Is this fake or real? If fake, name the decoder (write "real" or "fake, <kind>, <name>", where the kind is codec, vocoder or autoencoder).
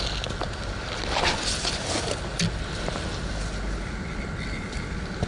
real